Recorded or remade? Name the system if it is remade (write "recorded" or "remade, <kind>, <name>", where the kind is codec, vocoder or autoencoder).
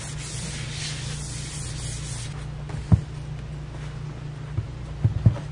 recorded